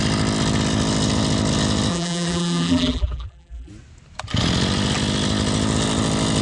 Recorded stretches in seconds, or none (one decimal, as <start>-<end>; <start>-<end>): 0.0-1.9; 3.7-6.4